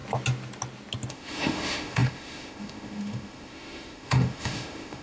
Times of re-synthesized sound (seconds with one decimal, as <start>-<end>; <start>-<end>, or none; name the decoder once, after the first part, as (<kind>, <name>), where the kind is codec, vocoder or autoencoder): 1.1-5.0 (autoencoder, DAC-VAE)